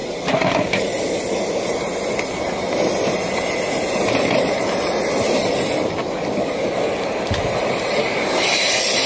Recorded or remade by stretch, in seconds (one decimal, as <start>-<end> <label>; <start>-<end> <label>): 0.0-9.1 recorded